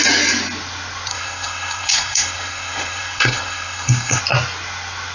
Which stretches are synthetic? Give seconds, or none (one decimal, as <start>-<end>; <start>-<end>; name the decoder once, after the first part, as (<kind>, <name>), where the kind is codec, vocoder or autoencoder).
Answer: 1.1-4.2 (codec, SNAC)